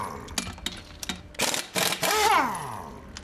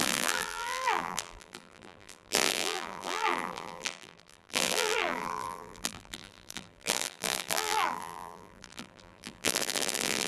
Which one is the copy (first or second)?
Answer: second